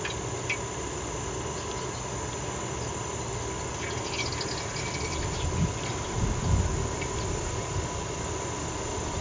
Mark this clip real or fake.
real